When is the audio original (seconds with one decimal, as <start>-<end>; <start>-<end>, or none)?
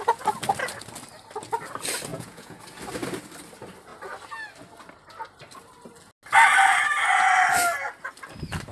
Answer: 0.0-2.1; 2.6-8.7